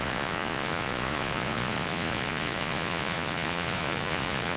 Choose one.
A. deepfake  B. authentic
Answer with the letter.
A